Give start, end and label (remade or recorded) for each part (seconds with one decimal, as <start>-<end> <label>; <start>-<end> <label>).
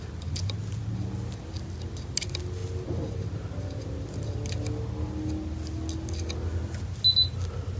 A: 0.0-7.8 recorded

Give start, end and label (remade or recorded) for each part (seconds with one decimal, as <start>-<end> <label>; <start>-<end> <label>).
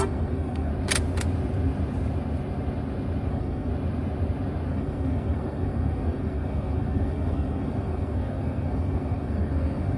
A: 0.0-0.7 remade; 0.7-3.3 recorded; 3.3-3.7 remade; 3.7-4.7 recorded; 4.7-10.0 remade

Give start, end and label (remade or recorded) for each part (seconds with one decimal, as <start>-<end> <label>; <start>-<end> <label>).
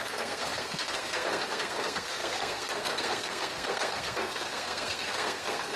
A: 0.0-5.8 remade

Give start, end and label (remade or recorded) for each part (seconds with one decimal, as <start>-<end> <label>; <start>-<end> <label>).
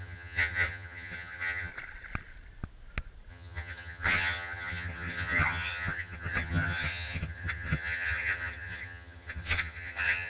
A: 0.0-1.7 remade; 1.7-3.3 recorded; 3.3-10.3 remade